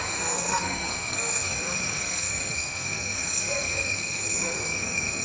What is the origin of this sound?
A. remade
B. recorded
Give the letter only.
A